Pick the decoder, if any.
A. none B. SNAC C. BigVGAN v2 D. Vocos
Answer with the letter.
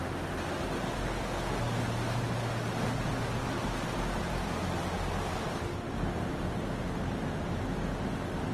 A